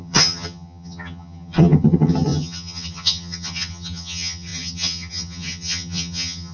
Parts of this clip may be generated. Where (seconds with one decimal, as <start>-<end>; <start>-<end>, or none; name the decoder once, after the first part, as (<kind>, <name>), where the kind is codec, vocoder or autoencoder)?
0.0-6.5 (vocoder, HiFi-GAN)